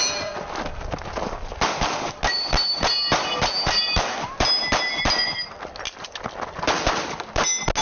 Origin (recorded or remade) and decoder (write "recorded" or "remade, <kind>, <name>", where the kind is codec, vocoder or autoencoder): recorded